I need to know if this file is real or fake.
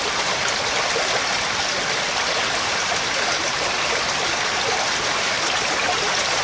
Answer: real